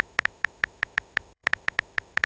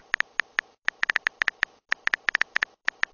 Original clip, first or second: second